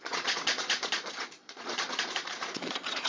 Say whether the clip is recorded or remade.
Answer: remade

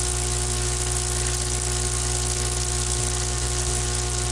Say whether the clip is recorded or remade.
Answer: recorded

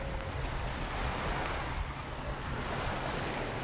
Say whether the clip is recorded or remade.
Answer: recorded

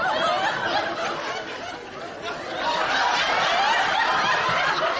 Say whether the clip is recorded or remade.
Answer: recorded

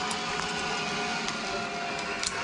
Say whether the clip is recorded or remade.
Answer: recorded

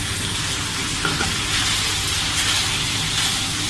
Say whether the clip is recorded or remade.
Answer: recorded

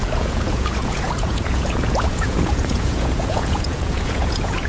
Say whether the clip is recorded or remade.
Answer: remade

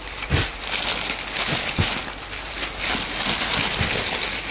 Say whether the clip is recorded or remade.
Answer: recorded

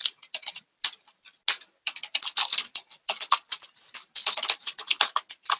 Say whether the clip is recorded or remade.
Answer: recorded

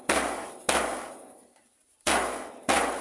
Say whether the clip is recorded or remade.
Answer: recorded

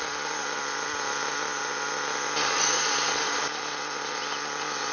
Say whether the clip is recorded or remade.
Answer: recorded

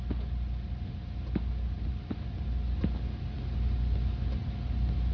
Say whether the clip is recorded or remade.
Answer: recorded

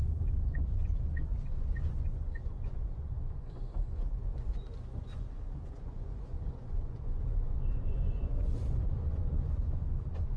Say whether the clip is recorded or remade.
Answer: remade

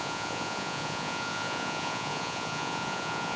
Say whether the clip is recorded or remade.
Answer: remade